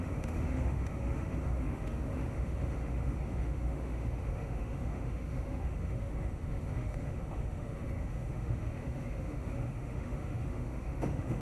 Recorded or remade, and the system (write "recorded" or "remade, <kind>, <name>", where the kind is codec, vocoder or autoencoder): remade, autoencoder, DAC-VAE